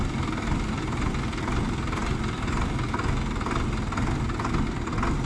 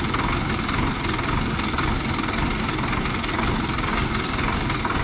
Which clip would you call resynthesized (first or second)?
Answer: second